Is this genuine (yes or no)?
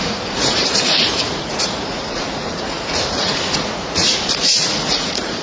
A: no